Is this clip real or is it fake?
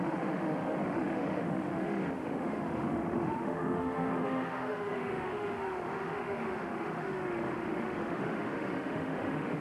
fake